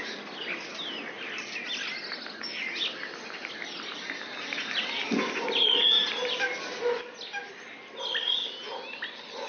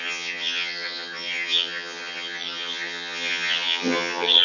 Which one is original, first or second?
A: first